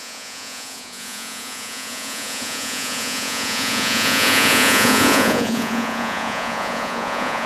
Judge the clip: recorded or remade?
remade